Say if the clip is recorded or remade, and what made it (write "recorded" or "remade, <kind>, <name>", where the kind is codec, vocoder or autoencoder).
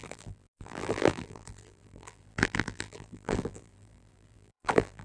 remade, vocoder, BigVGAN v2